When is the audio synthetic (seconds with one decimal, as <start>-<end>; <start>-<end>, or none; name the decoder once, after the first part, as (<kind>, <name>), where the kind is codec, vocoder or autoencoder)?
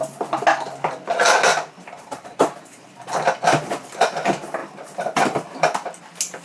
1.5-2.8 (vocoder, BigVGAN v2)